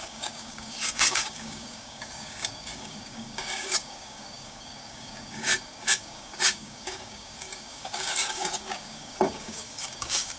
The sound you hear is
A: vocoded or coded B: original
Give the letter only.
A